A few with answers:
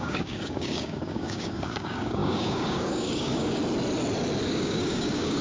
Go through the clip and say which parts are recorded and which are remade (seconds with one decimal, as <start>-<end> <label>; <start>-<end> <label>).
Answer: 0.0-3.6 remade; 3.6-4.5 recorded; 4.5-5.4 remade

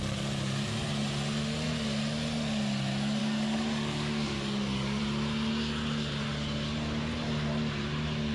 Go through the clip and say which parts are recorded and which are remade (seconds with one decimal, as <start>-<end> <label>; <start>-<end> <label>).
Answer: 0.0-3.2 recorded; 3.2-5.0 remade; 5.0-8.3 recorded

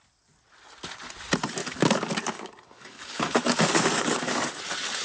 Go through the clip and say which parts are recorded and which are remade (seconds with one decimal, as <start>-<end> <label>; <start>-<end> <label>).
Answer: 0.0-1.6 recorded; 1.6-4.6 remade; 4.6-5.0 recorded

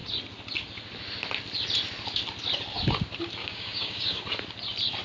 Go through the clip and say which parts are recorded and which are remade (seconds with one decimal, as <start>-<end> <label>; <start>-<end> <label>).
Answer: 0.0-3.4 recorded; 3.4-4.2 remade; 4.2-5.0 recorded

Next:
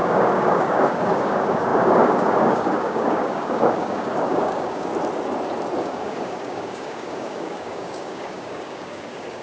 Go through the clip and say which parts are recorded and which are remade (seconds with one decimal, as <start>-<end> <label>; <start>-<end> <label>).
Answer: 0.0-4.9 remade; 4.9-5.8 recorded; 5.8-9.4 remade